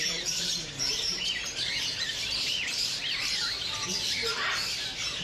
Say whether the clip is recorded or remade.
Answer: remade